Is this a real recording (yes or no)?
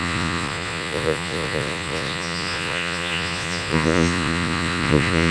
no